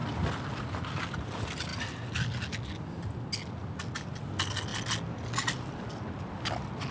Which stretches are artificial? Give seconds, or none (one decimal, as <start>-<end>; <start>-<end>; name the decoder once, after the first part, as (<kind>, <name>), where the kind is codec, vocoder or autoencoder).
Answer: none